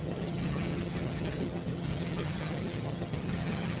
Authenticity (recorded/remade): remade